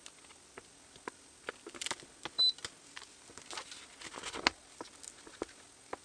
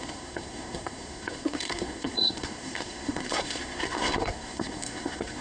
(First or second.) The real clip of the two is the first